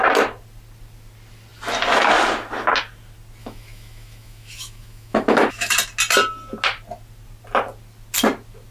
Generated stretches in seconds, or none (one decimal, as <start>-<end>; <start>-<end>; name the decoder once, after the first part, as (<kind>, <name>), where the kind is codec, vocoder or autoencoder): 3.4-5.7 (autoencoder, DAC-VAE)